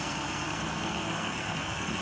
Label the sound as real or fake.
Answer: fake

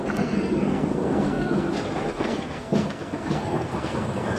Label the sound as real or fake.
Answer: fake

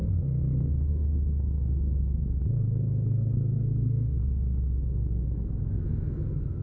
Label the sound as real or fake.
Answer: fake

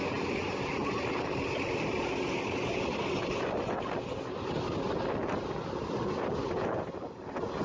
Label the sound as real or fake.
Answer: real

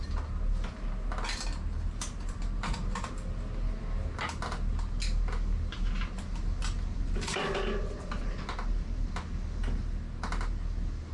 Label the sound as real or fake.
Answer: real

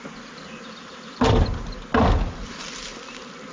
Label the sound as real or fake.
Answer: real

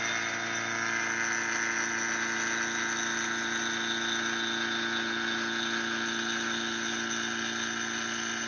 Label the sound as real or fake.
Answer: real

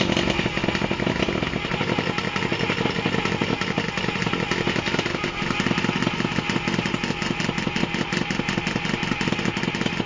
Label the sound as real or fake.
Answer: real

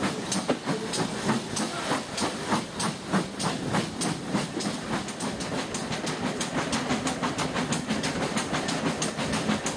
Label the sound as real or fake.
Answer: real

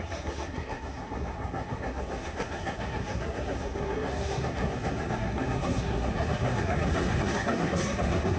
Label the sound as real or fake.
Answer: fake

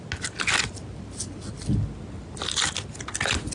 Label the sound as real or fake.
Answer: real